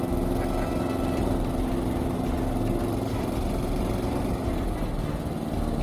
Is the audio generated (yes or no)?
no